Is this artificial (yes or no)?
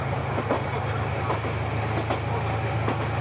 no